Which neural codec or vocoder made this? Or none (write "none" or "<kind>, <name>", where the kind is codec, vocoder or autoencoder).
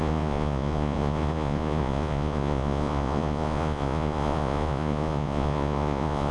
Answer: vocoder, Vocos